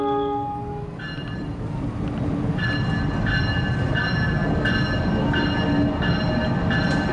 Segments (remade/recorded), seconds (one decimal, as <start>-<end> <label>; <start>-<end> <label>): 0.0-7.1 recorded